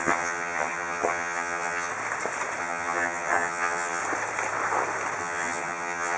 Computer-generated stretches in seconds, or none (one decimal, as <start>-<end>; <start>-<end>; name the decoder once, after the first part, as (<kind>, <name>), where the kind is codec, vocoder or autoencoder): 0.0-1.9 (vocoder, HiFi-GAN); 2.6-4.0; 5.2-6.2